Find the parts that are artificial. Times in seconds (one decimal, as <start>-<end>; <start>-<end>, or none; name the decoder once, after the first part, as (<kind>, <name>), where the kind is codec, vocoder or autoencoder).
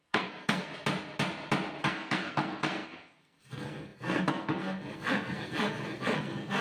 0.0-0.7 (codec, SNAC); 1.8-6.6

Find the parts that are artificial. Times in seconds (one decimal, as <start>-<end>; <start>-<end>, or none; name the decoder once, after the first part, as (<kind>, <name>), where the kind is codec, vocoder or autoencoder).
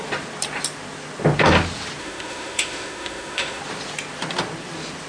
2.0-3.6 (autoencoder, DAC-VAE)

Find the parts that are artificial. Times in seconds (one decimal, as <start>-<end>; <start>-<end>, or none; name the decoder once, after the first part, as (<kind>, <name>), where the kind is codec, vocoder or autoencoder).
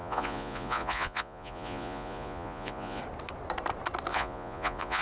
0.0-3.0 (vocoder, Vocos); 4.1-5.0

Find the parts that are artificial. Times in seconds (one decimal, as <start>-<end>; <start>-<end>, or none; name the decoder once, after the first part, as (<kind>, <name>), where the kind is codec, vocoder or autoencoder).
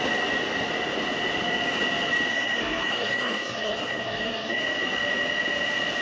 2.3-4.6 (codec, SNAC)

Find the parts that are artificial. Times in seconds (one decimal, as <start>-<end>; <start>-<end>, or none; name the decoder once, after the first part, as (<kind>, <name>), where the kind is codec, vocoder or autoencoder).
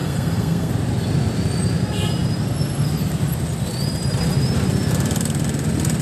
0.0-0.7 (codec, SNAC)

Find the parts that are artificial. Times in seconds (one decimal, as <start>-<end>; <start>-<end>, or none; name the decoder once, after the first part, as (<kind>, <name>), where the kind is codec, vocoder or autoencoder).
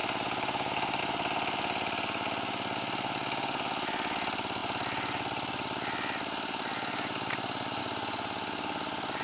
0.0-1.0 (vocoder, BigVGAN v2)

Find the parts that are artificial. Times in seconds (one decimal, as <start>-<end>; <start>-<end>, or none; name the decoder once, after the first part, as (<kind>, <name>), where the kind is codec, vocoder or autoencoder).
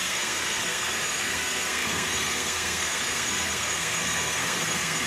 0.0-5.1 (codec, SNAC)